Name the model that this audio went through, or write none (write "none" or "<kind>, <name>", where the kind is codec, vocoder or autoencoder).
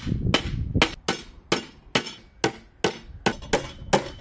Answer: none